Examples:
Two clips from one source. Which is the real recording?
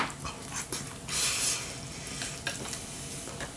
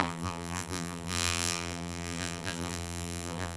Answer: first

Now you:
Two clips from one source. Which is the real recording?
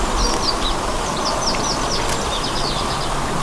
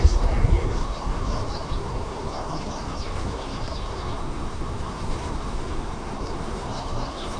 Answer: first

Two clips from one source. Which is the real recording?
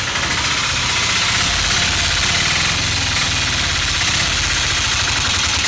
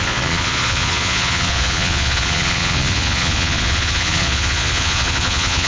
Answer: first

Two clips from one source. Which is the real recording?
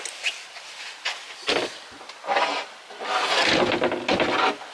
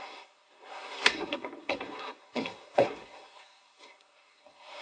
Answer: first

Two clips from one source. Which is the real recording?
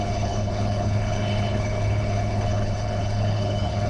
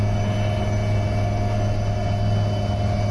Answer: second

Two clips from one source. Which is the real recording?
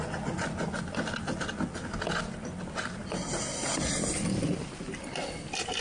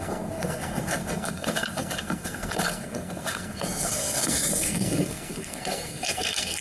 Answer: first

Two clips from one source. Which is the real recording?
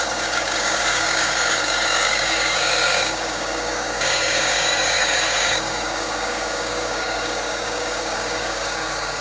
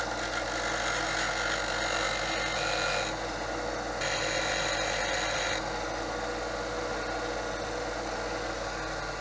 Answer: second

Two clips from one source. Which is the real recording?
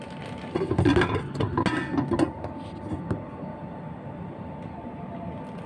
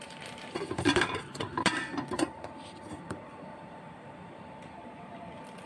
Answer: first